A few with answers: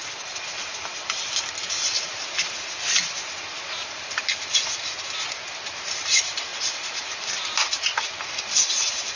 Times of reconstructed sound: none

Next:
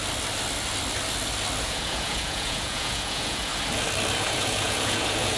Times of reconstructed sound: 1.6-3.5 (vocoder, Vocos); 4.1-5.4

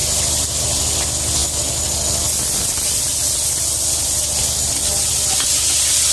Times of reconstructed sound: none

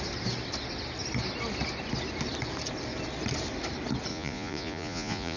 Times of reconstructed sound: 4.1-5.4 (vocoder, Vocos)

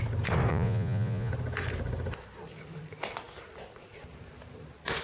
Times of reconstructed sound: 0.5-1.3 (vocoder, Vocos)

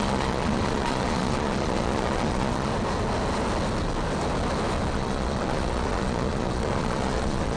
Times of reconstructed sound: 0.0-2.7 (vocoder, Vocos); 4.9-7.6